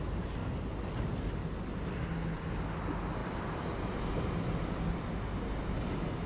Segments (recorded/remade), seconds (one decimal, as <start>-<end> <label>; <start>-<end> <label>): 0.0-3.2 recorded; 3.2-5.0 remade; 5.0-6.3 recorded